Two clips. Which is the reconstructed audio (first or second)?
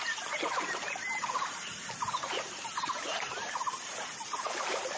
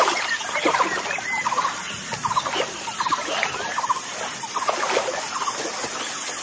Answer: first